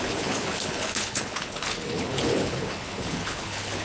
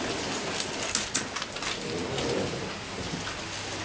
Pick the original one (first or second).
second